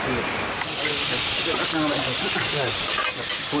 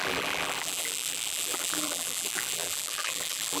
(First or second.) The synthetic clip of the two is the second